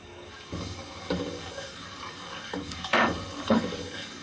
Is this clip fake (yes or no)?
yes